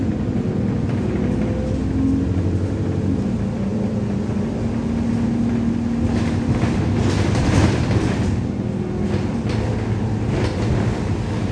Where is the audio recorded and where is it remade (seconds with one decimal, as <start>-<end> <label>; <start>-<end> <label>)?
0.0-11.5 recorded